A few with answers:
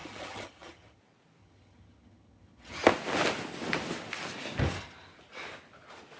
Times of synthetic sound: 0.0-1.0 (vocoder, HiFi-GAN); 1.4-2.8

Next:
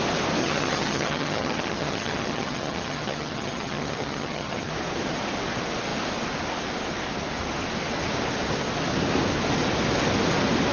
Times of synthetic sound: 0.4-4.7 (vocoder, HiFi-GAN)